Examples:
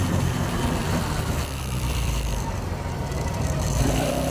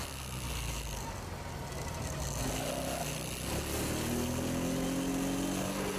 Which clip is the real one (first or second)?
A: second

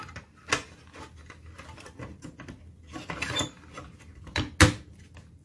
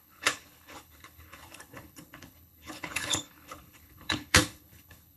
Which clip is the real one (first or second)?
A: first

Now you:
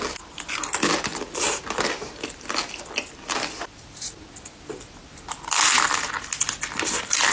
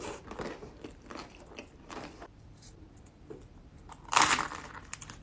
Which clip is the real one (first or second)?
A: first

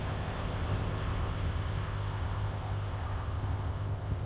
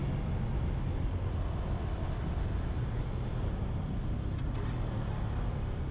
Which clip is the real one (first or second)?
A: second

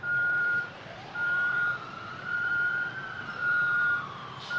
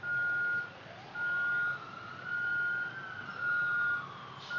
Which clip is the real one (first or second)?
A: second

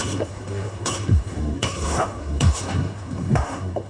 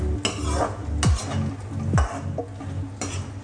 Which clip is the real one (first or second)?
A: second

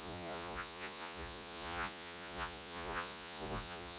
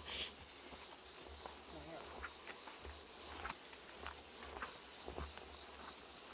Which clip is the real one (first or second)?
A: second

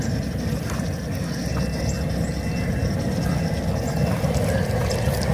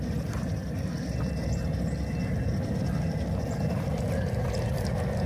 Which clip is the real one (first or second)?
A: first